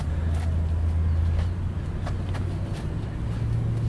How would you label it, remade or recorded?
recorded